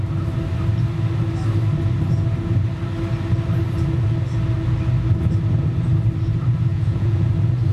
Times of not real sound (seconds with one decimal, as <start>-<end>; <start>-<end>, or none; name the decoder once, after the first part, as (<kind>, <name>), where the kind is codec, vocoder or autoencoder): 6.7-7.3 (vocoder, Vocos)